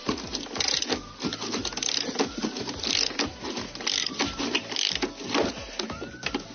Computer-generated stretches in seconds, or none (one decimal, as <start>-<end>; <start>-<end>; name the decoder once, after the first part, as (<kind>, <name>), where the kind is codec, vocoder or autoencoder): none